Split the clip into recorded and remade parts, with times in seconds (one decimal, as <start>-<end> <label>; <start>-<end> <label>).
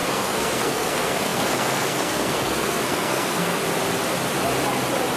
0.0-3.6 remade; 3.6-5.2 recorded